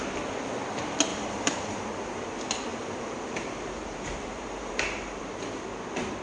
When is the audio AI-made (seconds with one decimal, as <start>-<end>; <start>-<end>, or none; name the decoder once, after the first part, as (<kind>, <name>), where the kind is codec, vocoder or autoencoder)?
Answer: 1.1-1.8 (vocoder, BigVGAN v2); 2.7-5.2